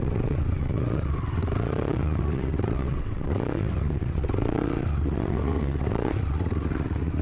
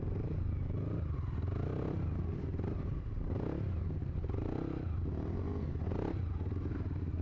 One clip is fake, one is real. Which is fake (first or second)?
first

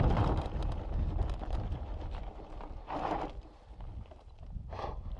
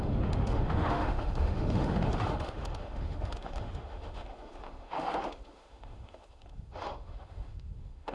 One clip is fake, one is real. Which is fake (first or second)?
second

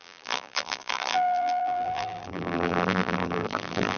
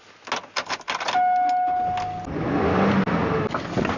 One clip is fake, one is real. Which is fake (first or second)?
first